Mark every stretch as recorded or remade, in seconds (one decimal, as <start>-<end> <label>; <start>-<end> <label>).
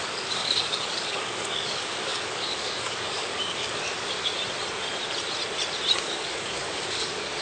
0.0-4.4 remade; 4.4-6.0 recorded; 6.0-7.4 remade